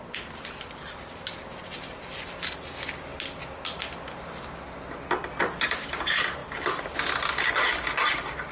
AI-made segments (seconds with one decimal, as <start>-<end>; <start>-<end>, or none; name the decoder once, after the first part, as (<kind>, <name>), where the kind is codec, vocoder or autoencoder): none